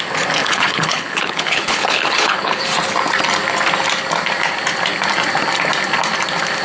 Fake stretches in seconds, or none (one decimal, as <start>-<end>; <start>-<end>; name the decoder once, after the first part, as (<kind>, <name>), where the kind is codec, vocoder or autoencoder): 0.4-2.6 (codec, HILCodec)